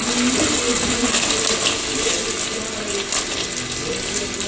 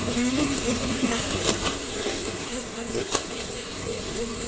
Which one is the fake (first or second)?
second